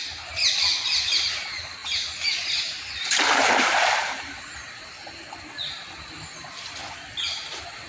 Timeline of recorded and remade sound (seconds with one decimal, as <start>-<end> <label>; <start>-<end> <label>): 0.0-1.3 recorded; 1.3-6.8 remade; 6.8-7.4 recorded; 7.4-7.9 remade